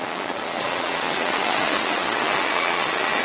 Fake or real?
fake